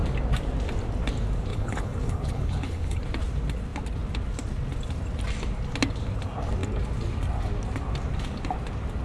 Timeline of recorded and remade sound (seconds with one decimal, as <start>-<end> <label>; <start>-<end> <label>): 0.0-1.5 recorded; 1.5-3.0 remade; 3.0-9.0 recorded